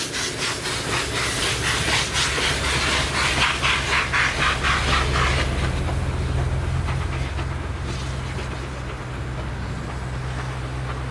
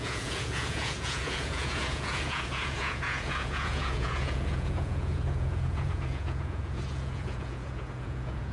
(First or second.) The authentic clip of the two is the first